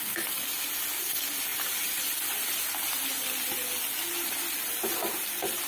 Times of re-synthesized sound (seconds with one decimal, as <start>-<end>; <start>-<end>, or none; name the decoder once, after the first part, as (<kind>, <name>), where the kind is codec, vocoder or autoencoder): none